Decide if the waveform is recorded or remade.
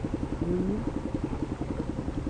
recorded